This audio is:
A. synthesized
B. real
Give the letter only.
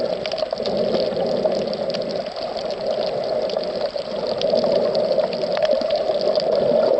B